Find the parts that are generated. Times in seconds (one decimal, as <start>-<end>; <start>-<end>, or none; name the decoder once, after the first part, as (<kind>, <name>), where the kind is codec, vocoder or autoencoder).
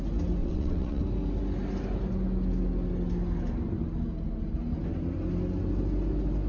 0.4-1.0 (vocoder, WaveNeXt)